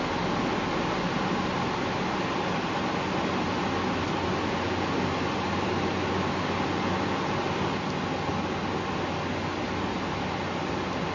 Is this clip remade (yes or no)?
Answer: no